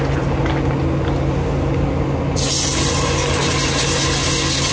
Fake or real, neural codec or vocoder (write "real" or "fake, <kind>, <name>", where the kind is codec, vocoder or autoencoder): real